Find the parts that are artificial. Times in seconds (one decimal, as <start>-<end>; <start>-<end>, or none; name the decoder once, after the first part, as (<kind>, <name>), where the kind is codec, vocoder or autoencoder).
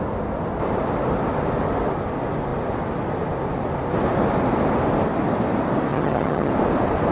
5.9-6.5 (vocoder, HiFi-GAN)